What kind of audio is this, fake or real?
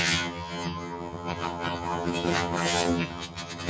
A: fake